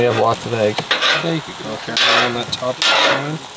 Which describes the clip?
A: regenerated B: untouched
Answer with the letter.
B